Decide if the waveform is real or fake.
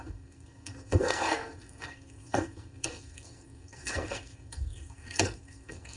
fake